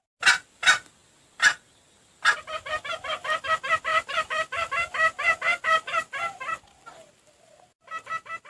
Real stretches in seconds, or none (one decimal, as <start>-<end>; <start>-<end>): 0.0-3.9; 4.7-8.5

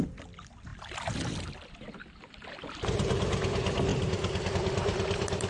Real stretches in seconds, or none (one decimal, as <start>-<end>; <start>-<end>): 3.9-4.5

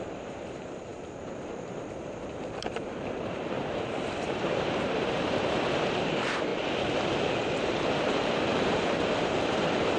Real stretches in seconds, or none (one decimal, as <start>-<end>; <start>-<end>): 6.5-7.4

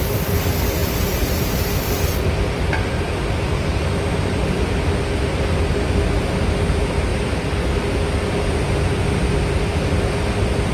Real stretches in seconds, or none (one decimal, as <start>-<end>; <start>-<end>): 0.0-10.7

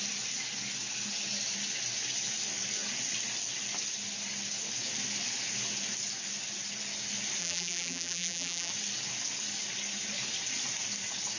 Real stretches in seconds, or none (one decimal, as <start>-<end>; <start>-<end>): 0.0-7.4; 8.7-11.4

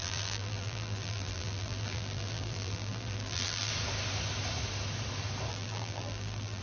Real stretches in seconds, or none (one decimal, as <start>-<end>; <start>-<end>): 3.7-5.5

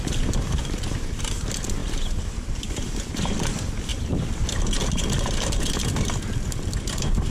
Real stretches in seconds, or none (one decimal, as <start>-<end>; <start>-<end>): 0.0-1.8; 3.5-7.3